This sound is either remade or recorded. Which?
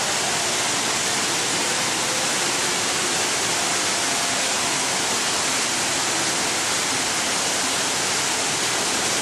recorded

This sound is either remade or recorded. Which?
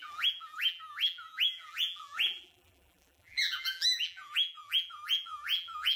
remade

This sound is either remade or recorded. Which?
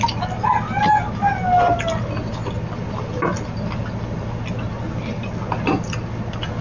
recorded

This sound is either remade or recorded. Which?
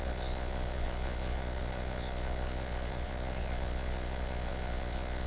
remade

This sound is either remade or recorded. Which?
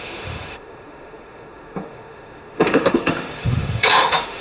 remade